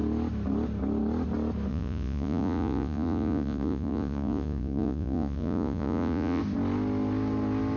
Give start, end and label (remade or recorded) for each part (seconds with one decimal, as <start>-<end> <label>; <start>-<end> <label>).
0.0-1.7 recorded; 1.7-6.4 remade; 6.4-7.8 recorded

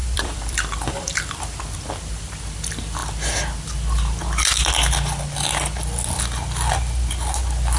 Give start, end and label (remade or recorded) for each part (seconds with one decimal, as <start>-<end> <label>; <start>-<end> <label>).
0.0-1.6 remade; 1.6-7.8 recorded

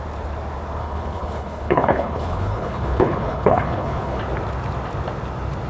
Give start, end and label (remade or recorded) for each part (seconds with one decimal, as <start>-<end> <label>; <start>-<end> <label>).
0.0-0.8 recorded; 0.8-4.2 remade; 4.2-5.7 recorded

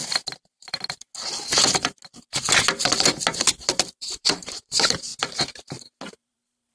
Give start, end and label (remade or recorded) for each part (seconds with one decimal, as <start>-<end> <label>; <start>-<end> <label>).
0.0-4.0 recorded; 4.0-5.1 remade; 5.1-6.2 recorded; 6.2-6.7 remade

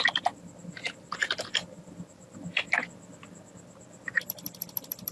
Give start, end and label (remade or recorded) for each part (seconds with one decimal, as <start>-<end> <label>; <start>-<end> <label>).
0.0-5.1 recorded

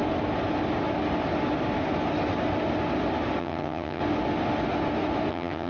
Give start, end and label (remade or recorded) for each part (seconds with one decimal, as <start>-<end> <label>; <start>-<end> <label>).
0.0-3.4 recorded; 3.4-4.0 remade; 4.0-5.3 recorded; 5.3-5.7 remade

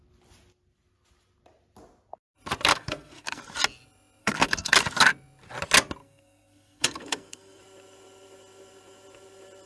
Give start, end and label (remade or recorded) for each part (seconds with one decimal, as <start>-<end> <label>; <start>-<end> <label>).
0.0-2.7 recorded; 2.7-3.4 remade; 3.4-4.2 recorded; 4.2-4.8 remade; 4.8-6.0 recorded; 6.0-7.6 remade; 7.6-9.7 recorded